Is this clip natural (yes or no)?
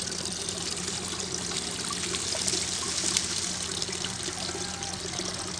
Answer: yes